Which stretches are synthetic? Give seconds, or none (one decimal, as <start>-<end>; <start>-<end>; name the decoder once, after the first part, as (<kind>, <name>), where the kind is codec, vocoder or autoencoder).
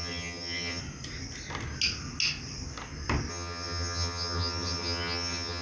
0.0-0.8 (vocoder, HiFi-GAN); 3.3-5.6